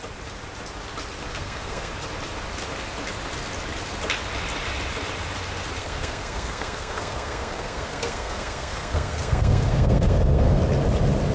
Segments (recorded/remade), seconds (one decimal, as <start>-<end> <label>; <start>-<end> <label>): 0.0-1.3 recorded; 1.3-1.9 remade; 1.9-5.8 recorded; 5.8-10.6 remade; 10.6-11.3 recorded